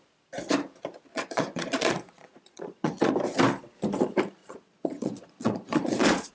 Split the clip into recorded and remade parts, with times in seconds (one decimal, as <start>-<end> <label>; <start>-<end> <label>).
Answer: 0.0-1.1 recorded; 1.1-3.1 remade; 3.1-4.4 recorded; 4.4-6.3 remade